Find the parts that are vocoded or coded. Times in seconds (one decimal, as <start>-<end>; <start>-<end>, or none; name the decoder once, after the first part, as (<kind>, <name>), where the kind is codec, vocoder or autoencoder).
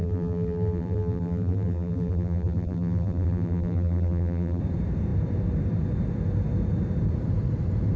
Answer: 0.0-4.6 (vocoder, BigVGAN v2)